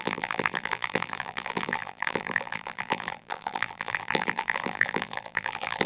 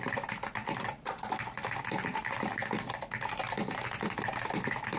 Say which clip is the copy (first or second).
first